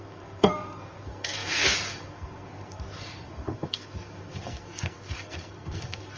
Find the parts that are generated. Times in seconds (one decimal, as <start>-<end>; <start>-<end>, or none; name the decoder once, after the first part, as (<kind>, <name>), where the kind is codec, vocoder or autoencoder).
0.0-6.2 (codec, SNAC)